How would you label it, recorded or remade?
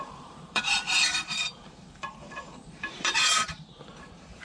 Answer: remade